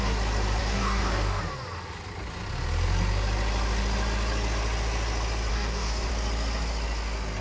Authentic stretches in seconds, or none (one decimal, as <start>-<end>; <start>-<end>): 0.0-0.6; 1.4-5.5; 6.1-7.4